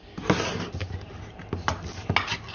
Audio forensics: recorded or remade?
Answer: recorded